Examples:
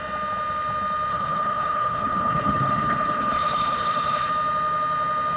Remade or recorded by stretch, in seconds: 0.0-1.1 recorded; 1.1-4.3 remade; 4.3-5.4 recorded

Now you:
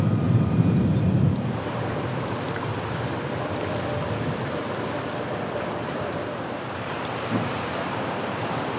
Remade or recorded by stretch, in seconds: 0.0-2.7 remade; 2.7-5.6 recorded; 5.6-8.8 remade

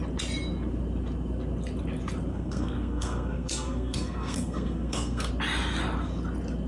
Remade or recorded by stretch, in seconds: 0.0-2.3 recorded; 2.3-5.3 remade; 5.3-6.7 recorded

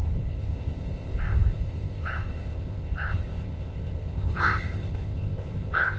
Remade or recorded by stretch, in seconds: 0.0-6.0 remade